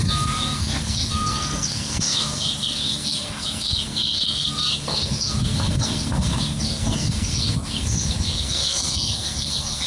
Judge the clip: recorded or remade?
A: remade